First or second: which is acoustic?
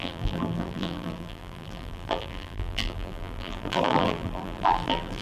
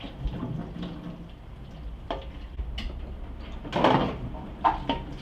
second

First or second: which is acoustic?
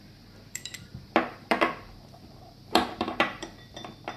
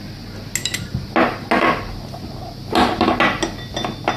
second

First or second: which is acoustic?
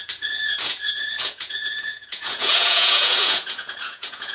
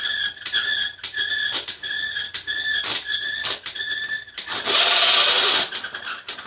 second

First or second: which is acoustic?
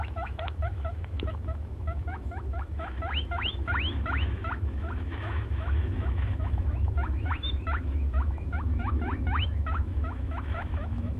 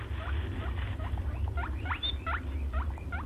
second